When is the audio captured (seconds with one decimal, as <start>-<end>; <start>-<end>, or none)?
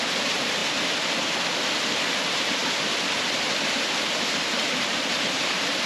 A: 0.6-2.1; 2.6-3.9